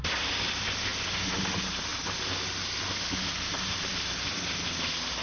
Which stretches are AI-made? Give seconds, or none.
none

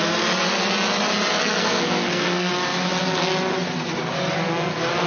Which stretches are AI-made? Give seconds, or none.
1.4-2.5 (codec, SNAC)

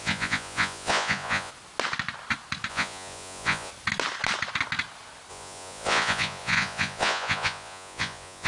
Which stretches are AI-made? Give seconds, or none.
0.0-1.5 (vocoder, Vocos); 2.7-3.7; 5.3-8.5